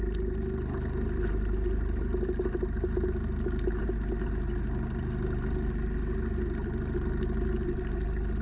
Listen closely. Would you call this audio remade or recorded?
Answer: recorded